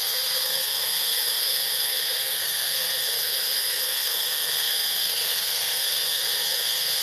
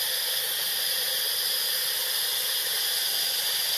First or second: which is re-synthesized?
first